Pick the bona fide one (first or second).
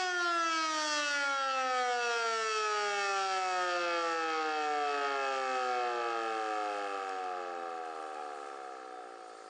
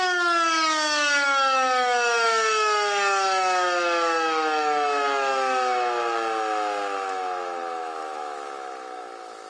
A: first